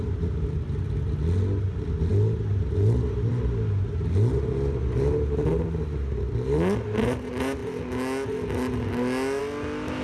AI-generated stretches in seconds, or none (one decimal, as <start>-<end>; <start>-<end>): none